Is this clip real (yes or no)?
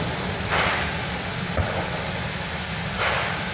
no